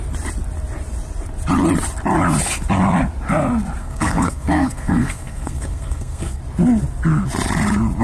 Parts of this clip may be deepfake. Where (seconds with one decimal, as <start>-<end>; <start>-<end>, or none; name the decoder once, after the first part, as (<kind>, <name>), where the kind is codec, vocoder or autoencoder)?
3.8-6.4 (codec, SNAC)